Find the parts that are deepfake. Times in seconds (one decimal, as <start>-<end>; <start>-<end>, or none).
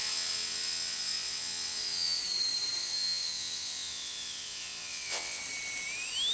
0.0-2.2; 2.8-5.4